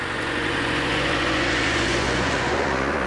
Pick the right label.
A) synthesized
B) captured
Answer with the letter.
A